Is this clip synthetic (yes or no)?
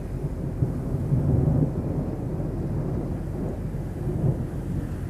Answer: no